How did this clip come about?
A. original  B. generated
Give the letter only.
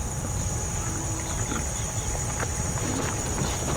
B